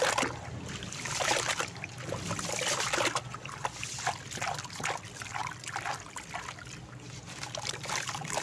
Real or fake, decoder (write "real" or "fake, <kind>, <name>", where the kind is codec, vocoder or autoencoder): real